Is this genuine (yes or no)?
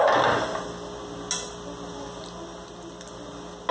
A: yes